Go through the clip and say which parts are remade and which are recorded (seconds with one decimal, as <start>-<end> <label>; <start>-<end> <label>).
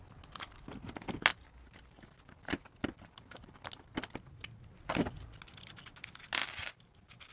0.0-7.3 recorded